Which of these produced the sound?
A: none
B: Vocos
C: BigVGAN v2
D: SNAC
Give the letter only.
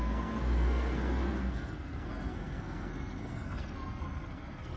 D